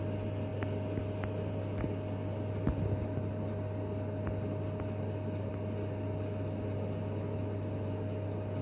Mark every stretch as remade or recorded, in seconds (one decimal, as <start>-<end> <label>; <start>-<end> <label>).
0.0-8.6 recorded